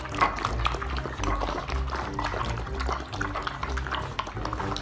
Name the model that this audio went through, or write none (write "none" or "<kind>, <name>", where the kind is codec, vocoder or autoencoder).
none